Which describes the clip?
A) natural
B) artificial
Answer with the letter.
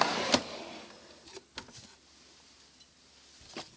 A